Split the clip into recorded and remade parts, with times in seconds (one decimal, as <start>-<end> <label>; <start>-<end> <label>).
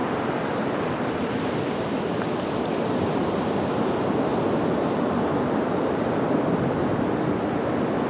0.0-0.8 remade; 0.8-1.9 recorded; 1.9-3.0 remade; 3.0-8.1 recorded